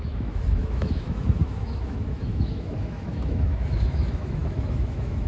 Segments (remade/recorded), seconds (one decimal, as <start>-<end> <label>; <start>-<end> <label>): 0.0-5.3 remade